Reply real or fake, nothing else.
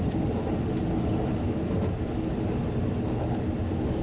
real